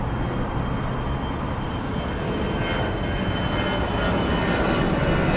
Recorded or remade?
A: recorded